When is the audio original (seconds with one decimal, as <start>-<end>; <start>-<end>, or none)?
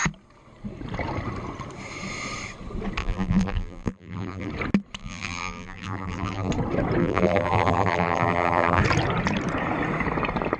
0.0-3.0; 4.5-5.0; 6.5-7.0; 8.8-10.6